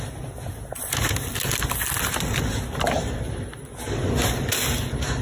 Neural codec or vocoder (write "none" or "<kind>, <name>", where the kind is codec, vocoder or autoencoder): none